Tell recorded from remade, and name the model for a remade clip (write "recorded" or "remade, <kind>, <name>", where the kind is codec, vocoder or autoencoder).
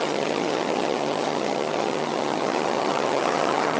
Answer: remade, vocoder, HiFi-GAN